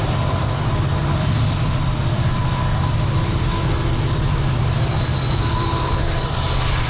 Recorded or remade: remade